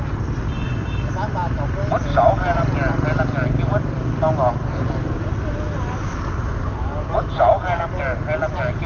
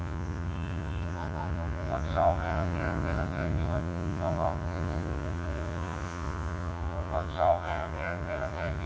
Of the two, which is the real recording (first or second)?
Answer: first